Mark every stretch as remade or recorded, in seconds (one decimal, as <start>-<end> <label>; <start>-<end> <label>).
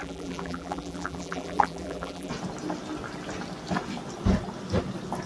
0.0-2.3 remade; 2.3-5.3 recorded